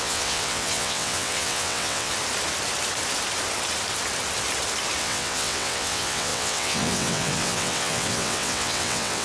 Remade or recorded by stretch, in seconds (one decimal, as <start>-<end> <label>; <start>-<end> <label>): 0.0-2.1 remade; 2.1-5.0 recorded; 5.0-9.2 remade

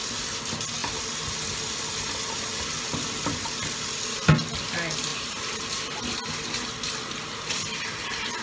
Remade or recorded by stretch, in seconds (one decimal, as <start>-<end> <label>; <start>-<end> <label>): 0.0-5.1 recorded; 5.1-5.7 remade; 5.7-8.4 recorded